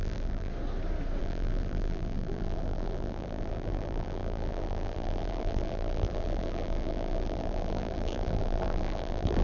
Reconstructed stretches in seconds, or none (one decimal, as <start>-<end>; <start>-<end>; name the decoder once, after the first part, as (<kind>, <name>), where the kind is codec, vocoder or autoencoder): 0.0-0.5 (vocoder, BigVGAN v2); 1.2-9.4